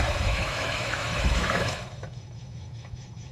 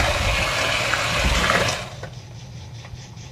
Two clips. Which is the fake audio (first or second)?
first